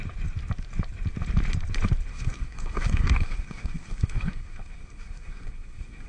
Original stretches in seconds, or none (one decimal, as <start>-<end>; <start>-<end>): 0.0-2.1